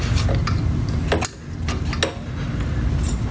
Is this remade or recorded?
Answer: recorded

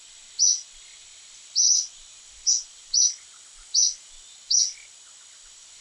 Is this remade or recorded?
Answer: recorded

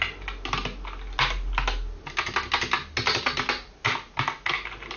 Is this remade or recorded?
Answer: recorded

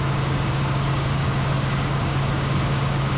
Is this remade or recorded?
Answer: remade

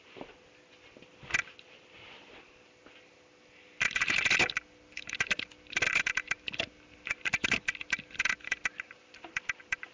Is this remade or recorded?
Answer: recorded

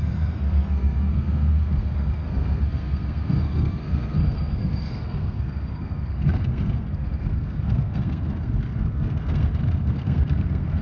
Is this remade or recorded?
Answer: remade